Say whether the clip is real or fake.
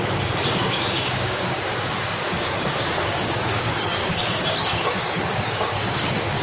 fake